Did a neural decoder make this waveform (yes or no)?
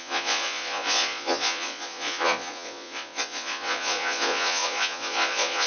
yes